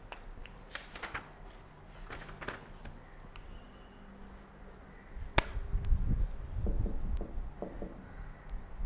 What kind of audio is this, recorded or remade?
recorded